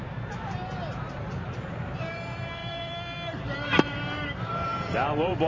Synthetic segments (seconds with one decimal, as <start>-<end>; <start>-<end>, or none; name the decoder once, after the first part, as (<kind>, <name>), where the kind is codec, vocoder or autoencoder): 1.0-5.5 (vocoder, BigVGAN v2)